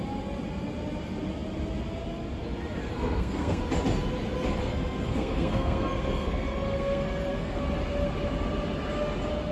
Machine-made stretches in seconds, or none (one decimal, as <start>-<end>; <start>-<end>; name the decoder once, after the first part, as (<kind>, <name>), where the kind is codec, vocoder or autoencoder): 2.8-3.6 (codec, SNAC); 4.6-7.6